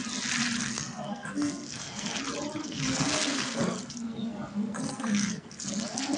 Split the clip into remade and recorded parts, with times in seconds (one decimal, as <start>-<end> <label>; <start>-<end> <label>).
0.0-0.6 recorded; 0.6-2.2 remade; 2.2-2.6 recorded; 2.6-6.2 remade